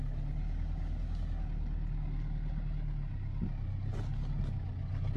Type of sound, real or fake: real